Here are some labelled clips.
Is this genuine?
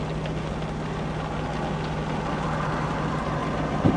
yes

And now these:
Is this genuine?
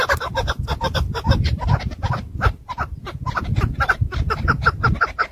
no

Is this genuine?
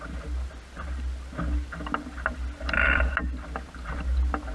yes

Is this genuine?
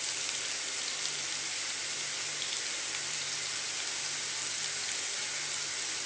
yes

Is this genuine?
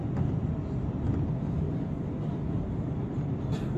yes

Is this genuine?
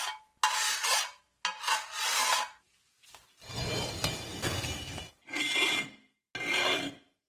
yes